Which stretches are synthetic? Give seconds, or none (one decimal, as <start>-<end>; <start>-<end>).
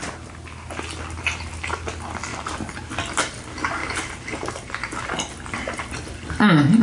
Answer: 2.3-2.9; 3.8-5.0